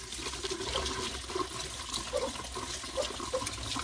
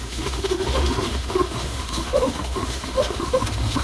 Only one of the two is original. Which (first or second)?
first